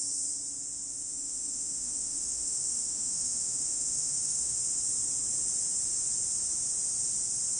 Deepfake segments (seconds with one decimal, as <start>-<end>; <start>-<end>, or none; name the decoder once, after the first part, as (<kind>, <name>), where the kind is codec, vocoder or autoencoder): 0.9-4.6 (autoencoder, DAC-VAE)